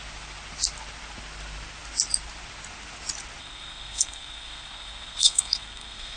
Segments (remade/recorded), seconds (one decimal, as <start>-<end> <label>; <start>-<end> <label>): 0.0-3.4 recorded; 3.4-6.2 remade

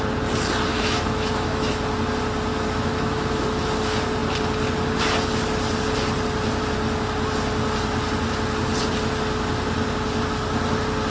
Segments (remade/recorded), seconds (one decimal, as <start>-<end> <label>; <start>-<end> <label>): 0.0-0.7 recorded; 0.7-1.7 remade; 1.7-2.5 recorded; 2.5-3.6 remade; 3.6-11.1 recorded

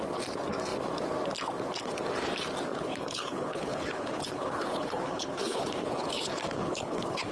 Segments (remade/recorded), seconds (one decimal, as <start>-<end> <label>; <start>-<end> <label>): 0.0-2.7 recorded; 2.7-7.3 remade

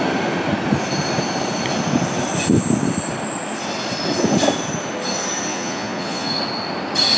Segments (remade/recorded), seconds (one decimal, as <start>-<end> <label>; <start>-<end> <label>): 0.0-5.5 recorded; 5.5-6.4 remade; 6.4-7.2 recorded

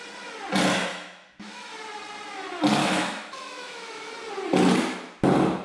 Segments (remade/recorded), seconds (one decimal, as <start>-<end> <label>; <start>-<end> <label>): 0.0-0.9 recorded; 0.9-1.7 remade; 1.7-2.8 recorded; 2.8-4.1 remade; 4.1-5.6 recorded